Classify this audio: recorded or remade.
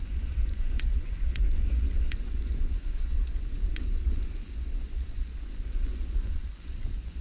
remade